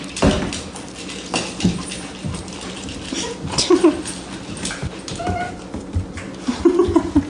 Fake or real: real